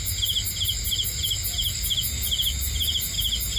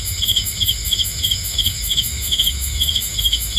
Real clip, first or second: first